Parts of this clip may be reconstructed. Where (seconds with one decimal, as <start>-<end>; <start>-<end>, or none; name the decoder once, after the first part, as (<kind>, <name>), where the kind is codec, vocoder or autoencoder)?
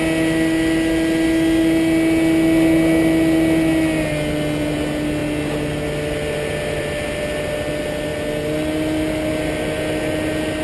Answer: none